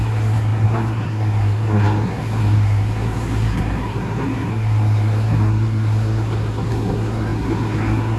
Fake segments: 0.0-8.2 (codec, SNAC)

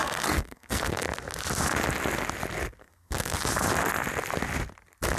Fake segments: 0.0-1.0 (codec, SNAC); 2.8-3.4

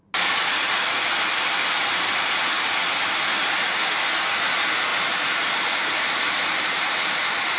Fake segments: none

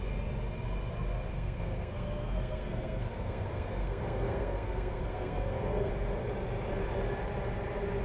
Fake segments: 1.3-5.9 (codec, SNAC)

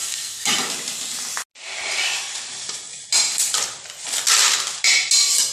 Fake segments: 0.0-0.7 (codec, SNAC)

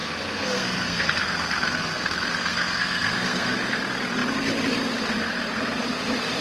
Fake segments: 0.0-3.8 (codec, SNAC)